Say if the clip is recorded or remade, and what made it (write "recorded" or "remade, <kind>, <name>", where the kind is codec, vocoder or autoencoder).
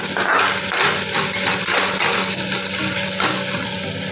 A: recorded